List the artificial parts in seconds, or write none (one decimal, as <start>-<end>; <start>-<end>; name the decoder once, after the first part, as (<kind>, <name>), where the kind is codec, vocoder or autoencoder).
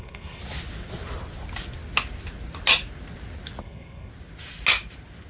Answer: 0.0-0.4 (codec, SNAC); 3.6-4.1